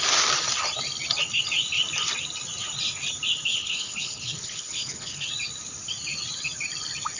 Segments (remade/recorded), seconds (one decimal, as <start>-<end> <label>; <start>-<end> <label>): 0.0-3.5 recorded; 3.5-5.3 remade; 5.3-7.2 recorded